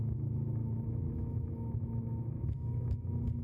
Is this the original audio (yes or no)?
no